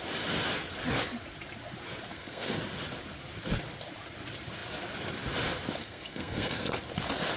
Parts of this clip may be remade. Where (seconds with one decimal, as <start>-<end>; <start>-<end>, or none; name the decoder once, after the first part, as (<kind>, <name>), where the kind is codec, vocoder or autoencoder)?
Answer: 2.1-2.6 (codec, SNAC); 5.8-6.7